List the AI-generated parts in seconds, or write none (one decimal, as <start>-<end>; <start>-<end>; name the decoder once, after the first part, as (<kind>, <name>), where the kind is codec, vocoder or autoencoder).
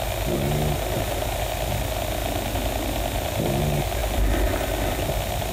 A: none